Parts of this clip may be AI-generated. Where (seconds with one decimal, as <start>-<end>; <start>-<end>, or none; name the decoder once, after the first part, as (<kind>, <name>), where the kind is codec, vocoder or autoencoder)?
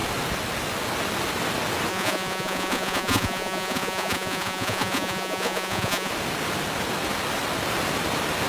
1.9-6.1 (vocoder, Vocos)